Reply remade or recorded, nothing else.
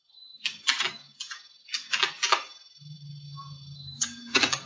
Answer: remade